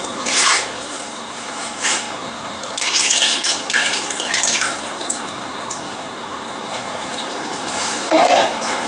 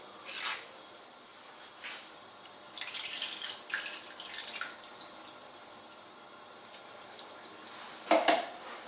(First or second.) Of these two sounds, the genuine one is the second